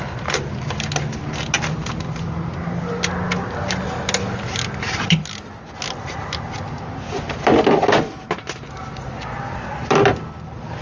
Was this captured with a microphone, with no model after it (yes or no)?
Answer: yes